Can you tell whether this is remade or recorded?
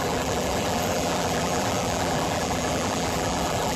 remade